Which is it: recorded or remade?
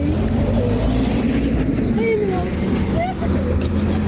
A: recorded